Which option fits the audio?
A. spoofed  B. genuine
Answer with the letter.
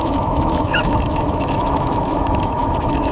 A